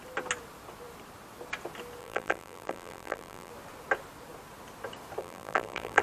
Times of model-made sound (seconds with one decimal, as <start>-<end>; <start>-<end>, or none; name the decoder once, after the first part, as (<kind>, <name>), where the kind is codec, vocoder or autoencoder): 2.0-3.5 (vocoder, BigVGAN v2); 5.2-6.0